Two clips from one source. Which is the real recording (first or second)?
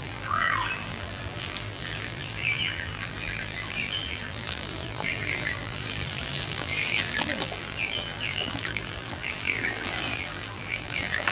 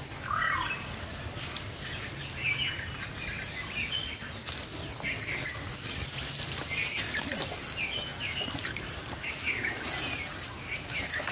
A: second